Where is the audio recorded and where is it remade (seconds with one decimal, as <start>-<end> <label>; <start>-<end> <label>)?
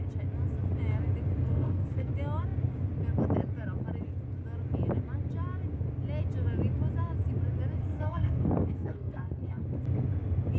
0.0-1.4 recorded; 1.4-2.1 remade; 2.1-7.8 recorded; 7.8-9.6 remade; 9.6-10.6 recorded